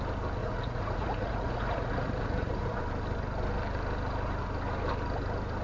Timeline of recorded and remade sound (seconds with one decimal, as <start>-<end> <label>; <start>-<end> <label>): 0.0-0.4 recorded; 0.4-2.8 remade; 2.8-5.6 recorded